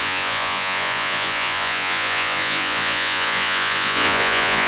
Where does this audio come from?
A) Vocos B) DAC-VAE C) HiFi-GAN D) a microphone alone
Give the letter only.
A